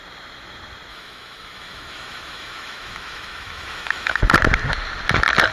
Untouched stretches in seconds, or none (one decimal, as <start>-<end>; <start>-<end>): 0.0-0.9; 4.2-5.5